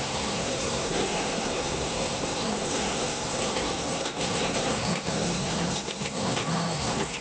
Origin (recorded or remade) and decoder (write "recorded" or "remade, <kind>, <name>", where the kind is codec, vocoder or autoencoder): remade, codec, SNAC